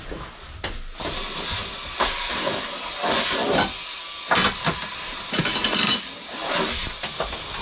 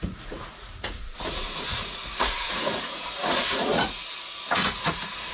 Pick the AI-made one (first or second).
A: second